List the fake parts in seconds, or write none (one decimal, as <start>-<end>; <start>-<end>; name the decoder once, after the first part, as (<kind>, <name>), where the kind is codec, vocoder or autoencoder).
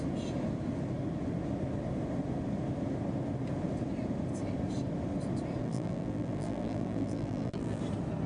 5.6-7.8 (vocoder, BigVGAN v2)